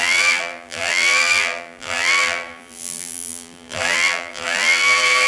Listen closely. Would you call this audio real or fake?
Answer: fake